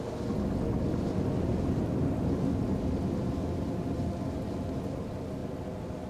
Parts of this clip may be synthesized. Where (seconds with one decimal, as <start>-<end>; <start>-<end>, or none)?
none

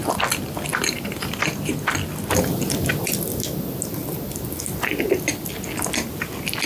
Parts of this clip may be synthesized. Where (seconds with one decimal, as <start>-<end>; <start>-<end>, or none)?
0.7-2.9

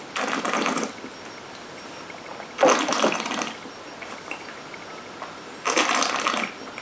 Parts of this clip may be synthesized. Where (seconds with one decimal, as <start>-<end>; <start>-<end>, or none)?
none